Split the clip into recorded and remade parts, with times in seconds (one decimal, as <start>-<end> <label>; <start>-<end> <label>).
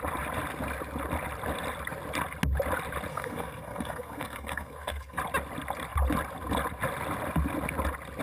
0.0-3.1 recorded; 3.1-5.2 remade; 5.2-8.2 recorded